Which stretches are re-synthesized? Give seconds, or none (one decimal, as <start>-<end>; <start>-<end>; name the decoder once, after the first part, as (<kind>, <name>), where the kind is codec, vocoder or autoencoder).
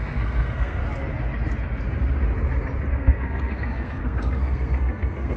0.0-0.8 (codec, SNAC); 2.9-5.4